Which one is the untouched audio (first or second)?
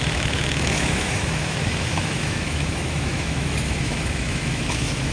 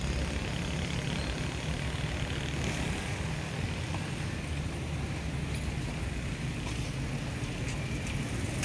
second